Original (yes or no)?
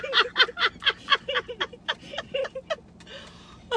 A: yes